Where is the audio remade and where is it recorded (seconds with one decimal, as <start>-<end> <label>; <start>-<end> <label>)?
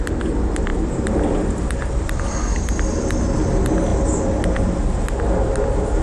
0.0-6.0 recorded